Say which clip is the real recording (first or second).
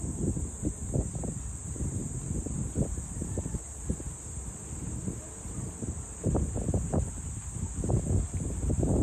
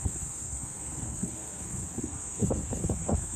first